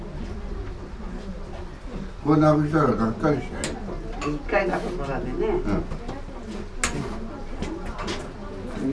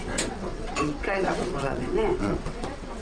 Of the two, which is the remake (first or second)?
second